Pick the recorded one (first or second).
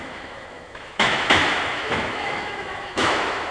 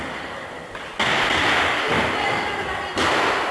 second